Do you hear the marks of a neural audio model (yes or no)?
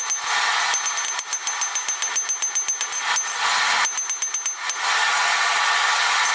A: no